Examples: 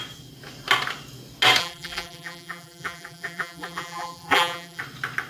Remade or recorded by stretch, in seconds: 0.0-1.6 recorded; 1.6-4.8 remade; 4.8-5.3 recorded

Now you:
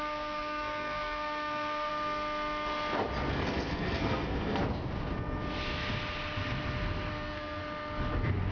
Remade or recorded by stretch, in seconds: 0.0-1.9 remade; 1.9-3.3 recorded; 3.3-4.6 remade; 4.6-7.1 recorded; 7.1-7.6 remade; 7.6-8.5 recorded

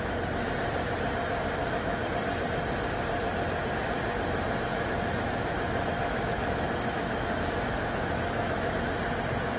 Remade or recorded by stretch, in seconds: 0.0-1.6 recorded; 1.6-2.1 remade; 2.1-4.7 recorded; 4.7-8.8 remade; 8.8-9.6 recorded

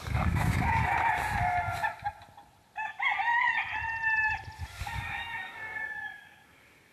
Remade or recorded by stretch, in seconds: 0.0-0.8 remade; 0.8-4.8 recorded; 4.8-6.9 remade

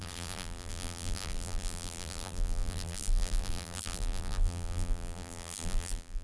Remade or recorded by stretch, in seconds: 0.0-6.2 remade

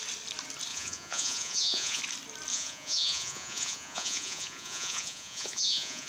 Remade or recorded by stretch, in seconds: 0.0-0.7 recorded; 0.7-2.0 remade; 2.0-2.5 recorded; 2.5-6.1 remade

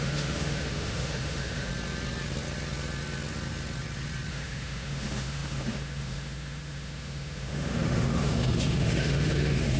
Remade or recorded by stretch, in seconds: 0.0-1.7 remade; 1.7-4.3 recorded; 4.3-9.8 remade